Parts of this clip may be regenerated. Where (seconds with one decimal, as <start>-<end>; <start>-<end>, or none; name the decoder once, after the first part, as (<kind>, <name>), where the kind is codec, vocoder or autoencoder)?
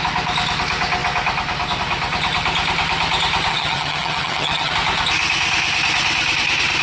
3.5-4.7 (vocoder, HiFi-GAN)